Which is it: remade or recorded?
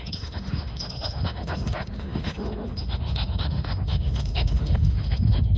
remade